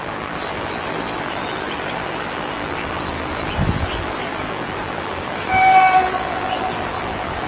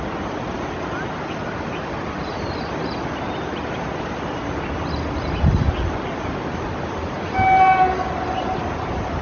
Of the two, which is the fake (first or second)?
first